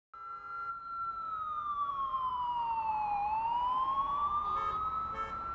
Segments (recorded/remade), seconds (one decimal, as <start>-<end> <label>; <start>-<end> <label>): 0.0-1.8 recorded; 1.8-2.9 remade; 2.9-5.5 recorded